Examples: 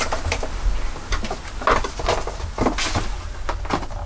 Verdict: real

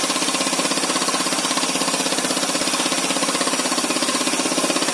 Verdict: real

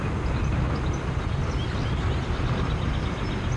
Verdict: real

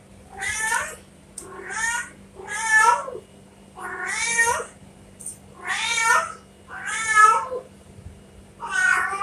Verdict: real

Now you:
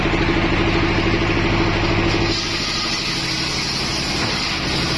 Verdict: real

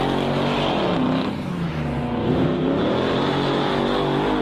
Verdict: real